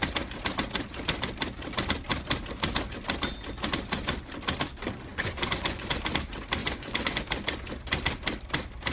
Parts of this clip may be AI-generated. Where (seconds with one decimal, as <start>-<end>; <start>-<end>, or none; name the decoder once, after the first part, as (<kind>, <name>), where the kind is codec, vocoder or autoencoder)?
5.1-6.0 (vocoder, Vocos); 6.6-7.2